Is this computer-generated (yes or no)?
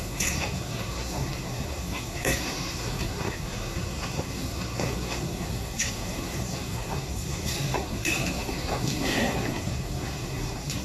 yes